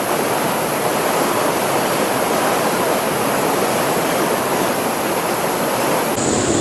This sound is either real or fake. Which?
real